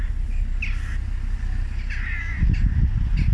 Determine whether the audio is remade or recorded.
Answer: recorded